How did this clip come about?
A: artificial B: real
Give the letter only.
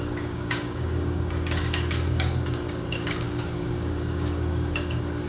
A